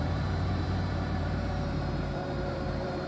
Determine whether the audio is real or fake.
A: fake